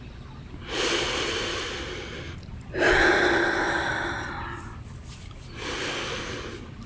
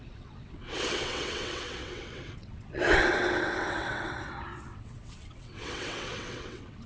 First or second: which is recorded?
first